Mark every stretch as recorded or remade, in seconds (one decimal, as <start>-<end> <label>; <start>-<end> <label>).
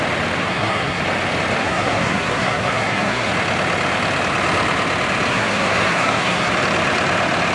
0.0-0.4 recorded; 0.4-1.0 remade; 1.0-1.6 recorded; 1.6-3.3 remade; 3.3-5.3 recorded; 5.3-6.5 remade; 6.5-7.5 recorded